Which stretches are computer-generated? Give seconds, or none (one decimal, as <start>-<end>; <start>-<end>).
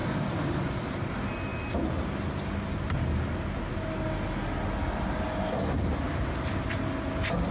none